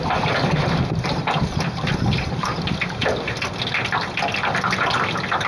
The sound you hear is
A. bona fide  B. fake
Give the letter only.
A